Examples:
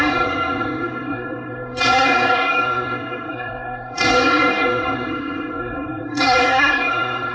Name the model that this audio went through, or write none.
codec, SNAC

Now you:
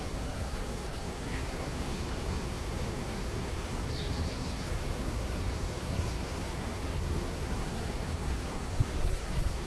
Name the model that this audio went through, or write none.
codec, SNAC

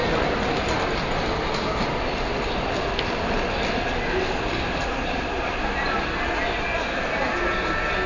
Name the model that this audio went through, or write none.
none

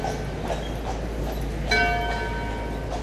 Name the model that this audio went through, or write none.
none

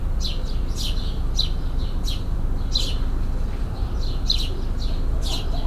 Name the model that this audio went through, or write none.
none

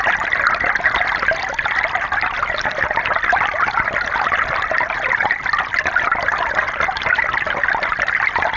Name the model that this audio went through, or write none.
none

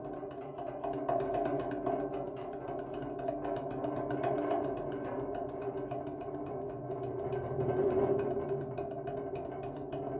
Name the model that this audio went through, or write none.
none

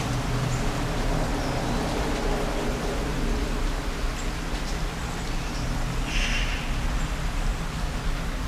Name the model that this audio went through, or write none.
none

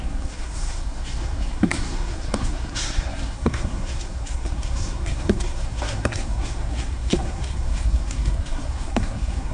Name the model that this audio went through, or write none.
codec, SNAC